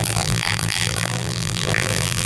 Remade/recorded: remade